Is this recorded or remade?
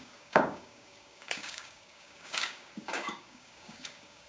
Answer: remade